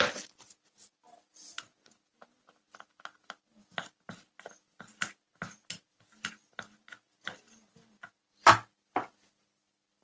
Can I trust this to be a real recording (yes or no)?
yes